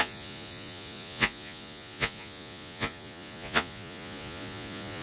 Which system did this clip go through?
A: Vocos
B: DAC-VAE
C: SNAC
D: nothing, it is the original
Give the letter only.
A